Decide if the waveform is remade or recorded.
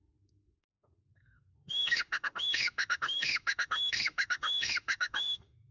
remade